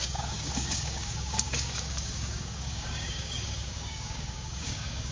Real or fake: fake